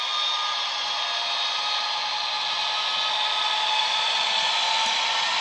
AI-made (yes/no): no